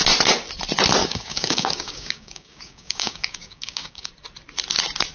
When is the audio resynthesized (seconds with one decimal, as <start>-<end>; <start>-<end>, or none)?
1.0-4.1